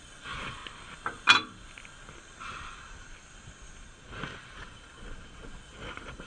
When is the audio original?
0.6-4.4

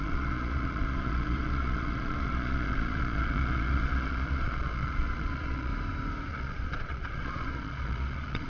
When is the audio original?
5.7-6.3